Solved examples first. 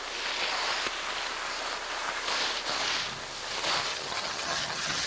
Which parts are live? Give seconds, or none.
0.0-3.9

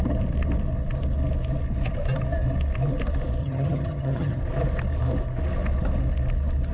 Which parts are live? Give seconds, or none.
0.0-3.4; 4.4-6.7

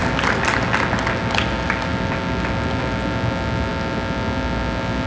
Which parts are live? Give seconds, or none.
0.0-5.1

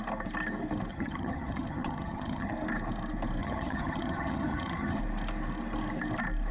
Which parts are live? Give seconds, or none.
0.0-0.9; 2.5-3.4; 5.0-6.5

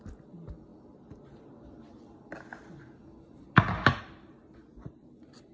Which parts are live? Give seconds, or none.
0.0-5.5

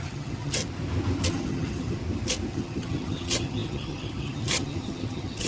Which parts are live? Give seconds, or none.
0.6-1.3; 2.0-2.5

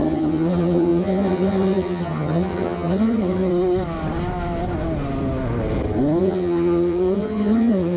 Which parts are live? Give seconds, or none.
3.5-6.2

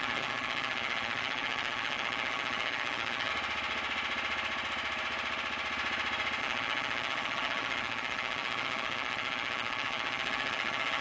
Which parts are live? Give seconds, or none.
3.3-6.4